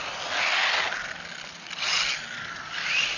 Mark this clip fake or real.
real